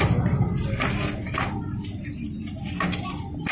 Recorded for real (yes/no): yes